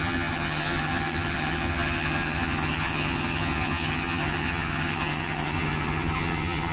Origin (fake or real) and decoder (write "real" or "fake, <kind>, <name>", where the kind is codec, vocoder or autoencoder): fake, vocoder, HiFi-GAN